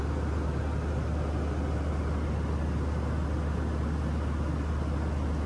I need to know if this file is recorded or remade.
recorded